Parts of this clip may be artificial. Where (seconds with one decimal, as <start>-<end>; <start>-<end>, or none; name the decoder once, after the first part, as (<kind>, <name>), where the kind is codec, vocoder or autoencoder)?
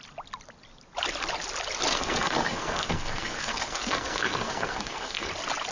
1.9-5.3 (codec, SNAC)